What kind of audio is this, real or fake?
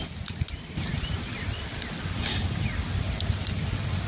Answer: real